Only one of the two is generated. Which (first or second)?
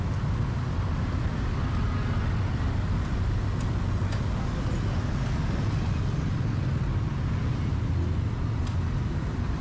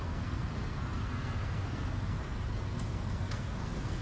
second